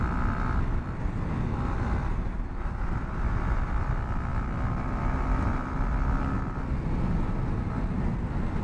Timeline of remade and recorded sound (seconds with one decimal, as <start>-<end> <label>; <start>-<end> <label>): 0.0-2.1 recorded; 2.1-3.7 remade; 3.7-8.6 recorded

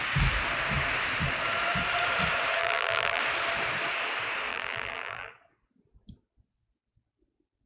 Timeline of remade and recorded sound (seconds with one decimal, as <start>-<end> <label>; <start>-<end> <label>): 0.0-2.6 recorded; 2.6-3.2 remade; 3.2-4.5 recorded; 4.5-5.3 remade; 5.3-7.7 recorded

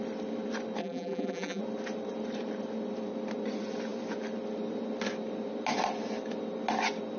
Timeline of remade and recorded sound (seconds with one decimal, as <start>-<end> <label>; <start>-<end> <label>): 0.0-0.8 recorded; 0.8-1.6 remade; 1.6-7.2 recorded